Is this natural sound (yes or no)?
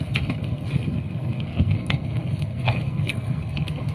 no